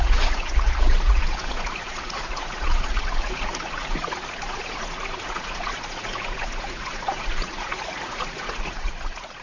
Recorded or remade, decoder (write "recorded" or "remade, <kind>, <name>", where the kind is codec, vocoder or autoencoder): remade, vocoder, Vocos